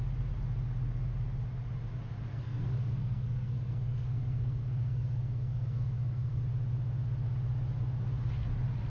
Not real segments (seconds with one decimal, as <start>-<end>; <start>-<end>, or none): 2.3-6.4